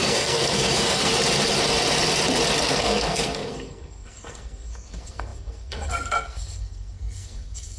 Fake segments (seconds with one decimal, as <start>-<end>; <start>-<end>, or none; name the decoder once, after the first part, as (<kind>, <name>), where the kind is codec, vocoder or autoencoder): 0.0-1.1 (codec, SNAC); 2.7-7.8